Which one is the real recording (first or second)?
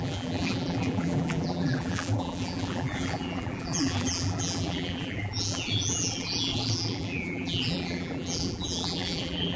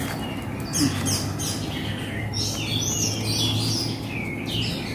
second